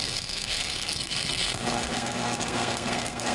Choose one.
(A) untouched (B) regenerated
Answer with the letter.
B